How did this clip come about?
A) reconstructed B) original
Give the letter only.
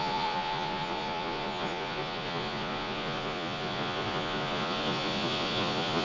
A